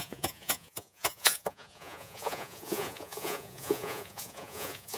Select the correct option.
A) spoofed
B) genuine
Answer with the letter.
A